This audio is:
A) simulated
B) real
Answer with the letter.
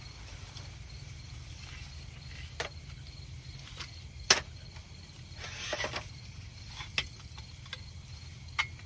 B